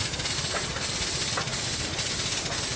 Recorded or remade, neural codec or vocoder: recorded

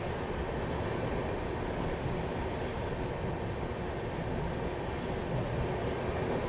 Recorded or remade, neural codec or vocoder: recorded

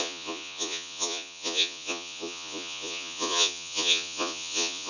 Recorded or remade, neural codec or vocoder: remade, vocoder, Vocos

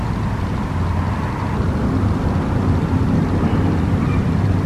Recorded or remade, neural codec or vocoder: recorded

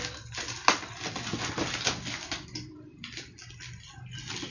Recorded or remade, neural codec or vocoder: recorded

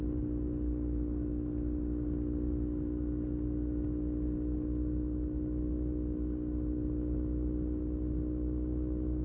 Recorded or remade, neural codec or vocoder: recorded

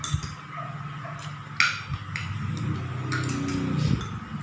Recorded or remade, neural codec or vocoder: recorded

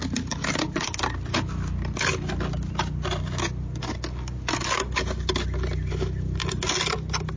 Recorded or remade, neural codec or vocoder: recorded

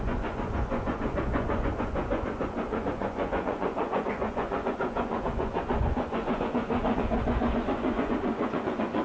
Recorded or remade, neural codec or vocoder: remade, vocoder, Vocos